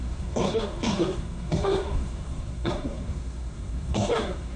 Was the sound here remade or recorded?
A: remade